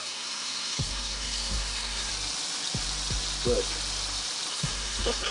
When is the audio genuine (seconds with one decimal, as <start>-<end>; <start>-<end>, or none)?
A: 2.1-4.5